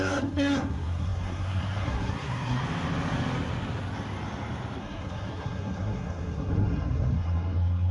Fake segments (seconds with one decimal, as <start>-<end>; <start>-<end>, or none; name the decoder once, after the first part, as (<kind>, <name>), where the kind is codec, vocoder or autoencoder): 0.0-2.6 (codec, SNAC); 4.8-7.9